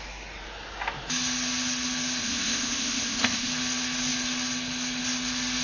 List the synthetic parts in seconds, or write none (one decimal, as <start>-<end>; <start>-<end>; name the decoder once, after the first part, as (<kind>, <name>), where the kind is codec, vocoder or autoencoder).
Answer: 2.2-3.5 (codec, ZipCodec)